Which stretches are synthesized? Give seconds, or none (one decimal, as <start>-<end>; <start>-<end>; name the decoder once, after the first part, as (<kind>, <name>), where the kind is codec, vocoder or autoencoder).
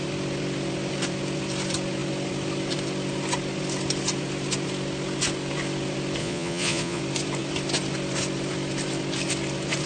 6.2-7.0 (vocoder, Vocos)